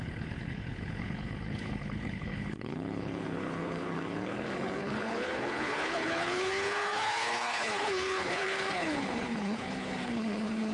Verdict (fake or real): fake